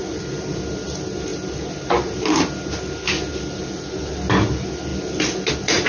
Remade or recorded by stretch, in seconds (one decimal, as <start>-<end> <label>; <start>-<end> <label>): 0.0-5.9 recorded